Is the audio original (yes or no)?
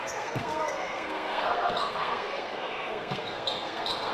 no